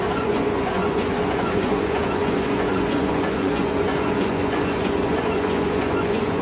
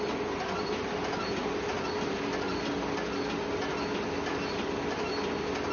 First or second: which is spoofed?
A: first